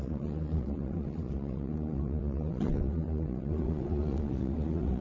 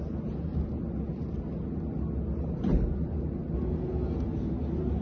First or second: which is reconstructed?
first